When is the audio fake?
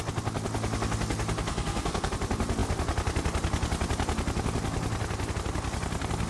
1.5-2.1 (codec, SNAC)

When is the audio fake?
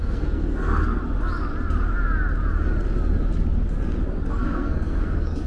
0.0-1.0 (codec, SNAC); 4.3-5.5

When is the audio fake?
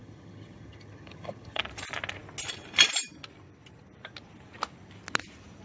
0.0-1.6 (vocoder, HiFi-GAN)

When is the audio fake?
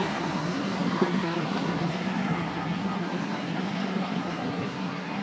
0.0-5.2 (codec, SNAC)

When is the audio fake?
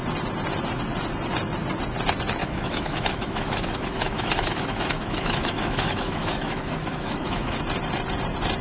2.4-7.6 (autoencoder, DAC-VAE)